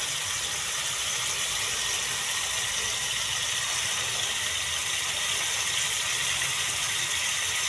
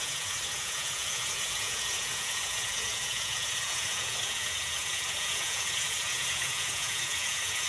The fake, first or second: second